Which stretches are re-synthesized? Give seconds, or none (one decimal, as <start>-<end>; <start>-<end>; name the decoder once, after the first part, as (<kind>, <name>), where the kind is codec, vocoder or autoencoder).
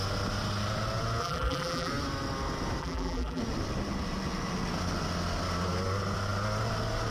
1.2-1.9 (vocoder, BigVGAN v2); 2.8-3.4